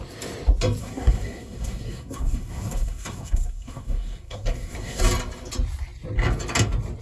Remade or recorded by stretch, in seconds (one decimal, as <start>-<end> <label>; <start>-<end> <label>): 0.0-0.8 recorded; 0.8-5.0 remade; 5.0-7.0 recorded